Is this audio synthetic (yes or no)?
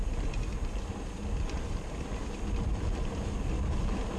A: no